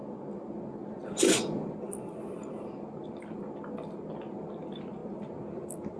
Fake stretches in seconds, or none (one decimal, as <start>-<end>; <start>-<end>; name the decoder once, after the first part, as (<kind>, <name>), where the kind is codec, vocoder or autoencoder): 0.9-2.4 (vocoder, BigVGAN v2); 4.3-5.0; 5.5-6.0